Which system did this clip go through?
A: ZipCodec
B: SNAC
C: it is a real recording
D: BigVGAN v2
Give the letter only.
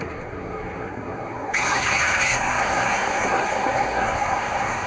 B